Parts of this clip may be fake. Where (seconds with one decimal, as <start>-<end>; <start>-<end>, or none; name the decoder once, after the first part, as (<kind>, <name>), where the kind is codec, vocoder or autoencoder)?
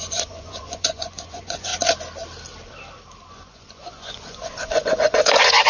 0.0-1.7 (vocoder, Vocos); 3.3-5.7